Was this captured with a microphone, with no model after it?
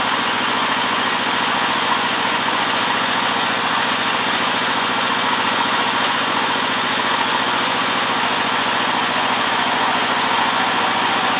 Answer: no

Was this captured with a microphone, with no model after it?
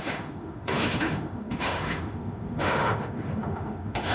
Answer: no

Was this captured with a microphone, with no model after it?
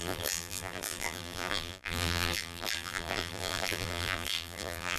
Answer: no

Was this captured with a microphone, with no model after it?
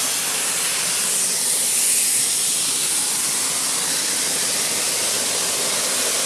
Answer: yes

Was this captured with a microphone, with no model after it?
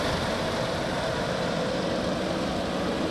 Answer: yes